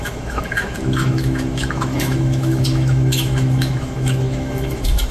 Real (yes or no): no